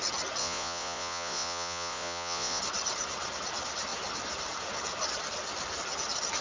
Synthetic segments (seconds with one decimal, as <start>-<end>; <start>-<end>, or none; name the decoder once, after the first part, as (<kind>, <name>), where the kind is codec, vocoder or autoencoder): 0.4-2.6 (vocoder, Vocos)